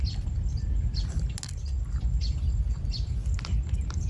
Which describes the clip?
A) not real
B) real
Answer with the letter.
B